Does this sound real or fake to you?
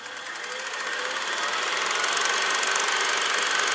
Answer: real